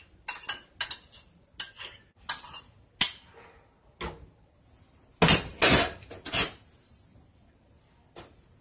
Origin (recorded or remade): recorded